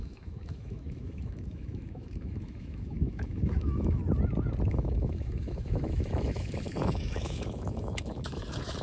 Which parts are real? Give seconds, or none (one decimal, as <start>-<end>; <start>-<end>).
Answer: 4.0-4.7